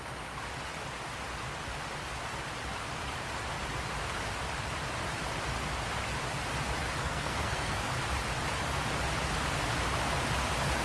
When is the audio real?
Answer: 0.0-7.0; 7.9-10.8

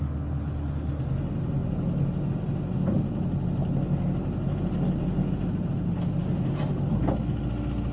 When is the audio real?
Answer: 0.0-7.9

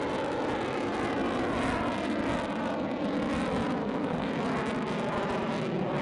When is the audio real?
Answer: 0.0-3.8; 4.3-6.0

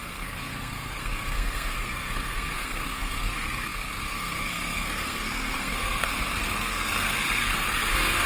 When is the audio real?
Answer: none

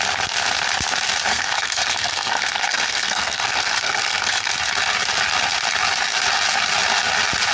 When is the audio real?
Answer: 0.0-1.3; 4.5-7.5

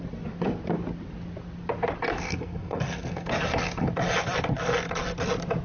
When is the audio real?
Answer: 0.0-2.1; 3.3-5.6

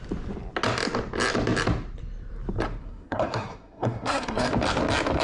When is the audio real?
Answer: 0.0-2.8; 4.5-5.2